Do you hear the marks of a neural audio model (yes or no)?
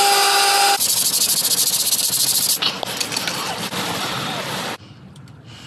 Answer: no